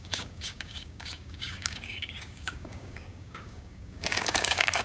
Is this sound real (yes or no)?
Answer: no